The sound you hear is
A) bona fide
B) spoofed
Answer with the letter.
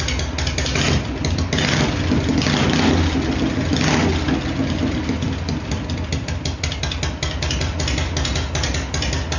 A